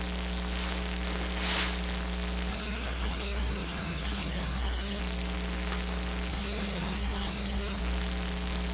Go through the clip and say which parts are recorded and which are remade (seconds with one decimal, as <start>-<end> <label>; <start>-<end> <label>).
0.0-2.5 recorded; 2.5-5.0 remade; 5.0-6.3 recorded; 6.3-7.8 remade; 7.8-8.7 recorded